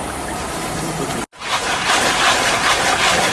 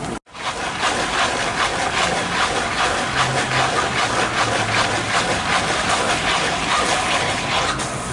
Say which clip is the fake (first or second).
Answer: first